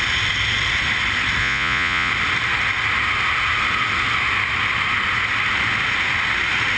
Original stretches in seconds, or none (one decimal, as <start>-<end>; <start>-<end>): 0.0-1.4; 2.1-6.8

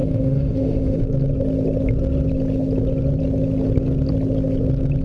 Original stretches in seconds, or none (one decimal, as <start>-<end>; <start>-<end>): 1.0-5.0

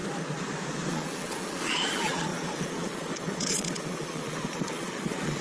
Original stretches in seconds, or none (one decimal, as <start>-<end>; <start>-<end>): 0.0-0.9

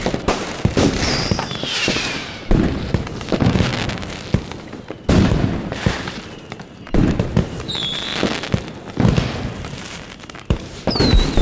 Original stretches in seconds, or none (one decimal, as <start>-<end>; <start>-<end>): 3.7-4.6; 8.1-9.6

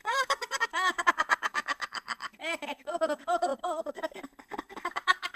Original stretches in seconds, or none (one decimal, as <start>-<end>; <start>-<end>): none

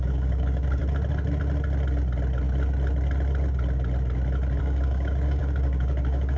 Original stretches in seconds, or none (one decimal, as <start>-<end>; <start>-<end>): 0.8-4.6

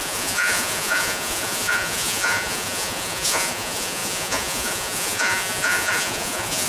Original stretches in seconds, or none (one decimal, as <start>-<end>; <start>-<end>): none

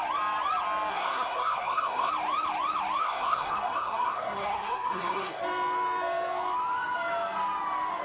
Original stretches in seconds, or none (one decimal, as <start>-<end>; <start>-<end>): 0.0-0.9; 2.1-3.0; 5.4-8.0